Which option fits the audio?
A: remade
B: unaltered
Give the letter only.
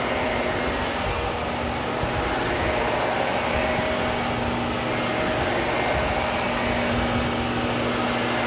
B